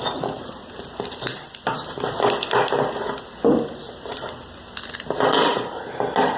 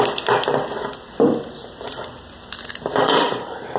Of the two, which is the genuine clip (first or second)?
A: first